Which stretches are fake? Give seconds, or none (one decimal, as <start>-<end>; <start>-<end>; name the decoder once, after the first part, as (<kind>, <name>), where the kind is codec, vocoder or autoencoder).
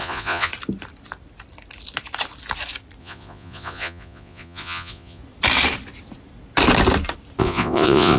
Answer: 0.0-0.5 (vocoder, Vocos); 3.0-5.2; 7.4-8.2